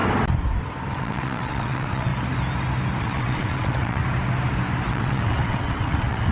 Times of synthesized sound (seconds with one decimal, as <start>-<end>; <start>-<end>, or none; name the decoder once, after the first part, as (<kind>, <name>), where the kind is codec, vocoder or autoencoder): 0.9-2.1 (vocoder, WaveNeXt); 3.0-4.0; 4.9-6.3